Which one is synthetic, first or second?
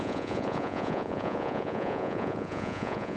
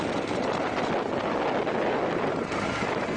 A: first